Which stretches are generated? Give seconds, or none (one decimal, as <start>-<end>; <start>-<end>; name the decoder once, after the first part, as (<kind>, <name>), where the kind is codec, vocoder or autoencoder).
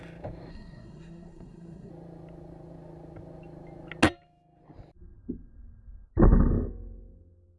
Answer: 0.5-1.9 (codec, SNAC)